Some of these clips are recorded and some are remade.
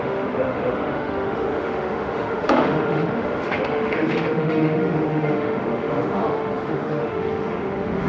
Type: remade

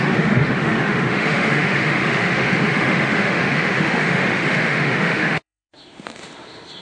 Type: remade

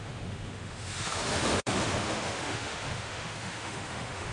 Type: remade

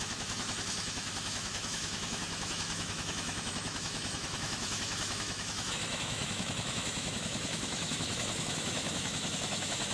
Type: remade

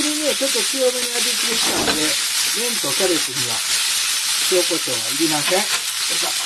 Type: recorded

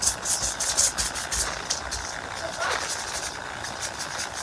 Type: recorded